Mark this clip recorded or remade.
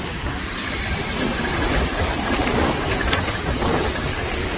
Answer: recorded